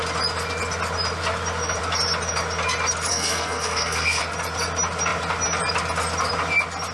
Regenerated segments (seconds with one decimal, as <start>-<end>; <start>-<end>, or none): 3.1-4.2